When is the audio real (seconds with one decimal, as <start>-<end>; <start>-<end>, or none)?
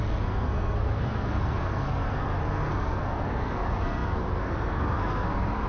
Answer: none